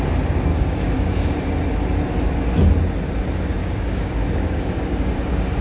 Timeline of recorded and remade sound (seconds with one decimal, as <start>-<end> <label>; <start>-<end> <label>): 0.0-0.5 recorded; 0.5-1.1 remade; 1.1-3.6 recorded; 3.6-5.6 remade

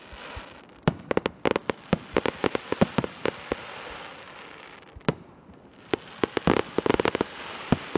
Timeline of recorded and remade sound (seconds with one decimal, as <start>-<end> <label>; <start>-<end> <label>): 0.0-8.0 recorded